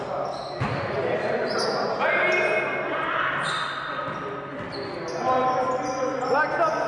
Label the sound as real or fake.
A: real